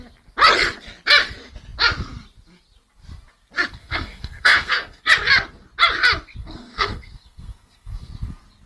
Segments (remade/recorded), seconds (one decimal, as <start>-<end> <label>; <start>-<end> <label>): 0.0-3.8 recorded; 3.8-5.1 remade; 5.1-6.4 recorded; 6.4-8.1 remade; 8.1-8.7 recorded